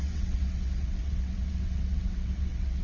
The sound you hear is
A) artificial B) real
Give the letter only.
A